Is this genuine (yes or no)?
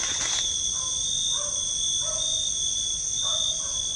yes